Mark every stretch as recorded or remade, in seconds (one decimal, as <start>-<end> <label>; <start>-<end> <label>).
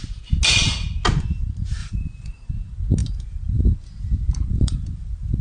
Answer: 0.0-1.8 recorded; 1.8-2.5 remade; 2.5-3.0 recorded; 3.0-5.4 remade